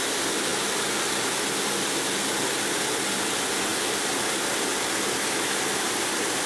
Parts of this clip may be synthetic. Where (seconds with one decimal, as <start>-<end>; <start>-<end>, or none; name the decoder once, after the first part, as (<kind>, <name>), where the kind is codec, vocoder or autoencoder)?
none